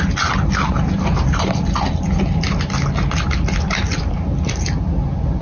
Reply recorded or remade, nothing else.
recorded